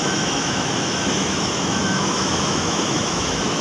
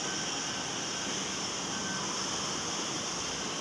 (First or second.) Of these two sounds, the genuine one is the second